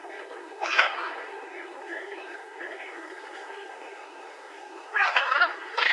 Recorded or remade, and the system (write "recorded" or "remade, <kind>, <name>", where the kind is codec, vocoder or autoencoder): remade, codec, SNAC